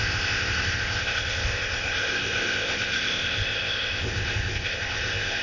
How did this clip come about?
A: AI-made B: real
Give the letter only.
A